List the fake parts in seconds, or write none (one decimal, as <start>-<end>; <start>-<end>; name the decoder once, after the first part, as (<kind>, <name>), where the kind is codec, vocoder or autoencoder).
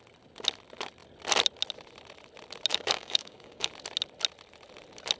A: 2.7-3.7 (codec, DAC)